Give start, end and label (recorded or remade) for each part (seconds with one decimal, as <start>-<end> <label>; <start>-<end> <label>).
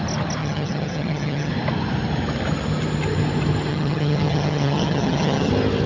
0.0-0.4 recorded; 0.4-1.5 remade; 1.5-3.7 recorded; 3.7-5.5 remade; 5.5-5.9 recorded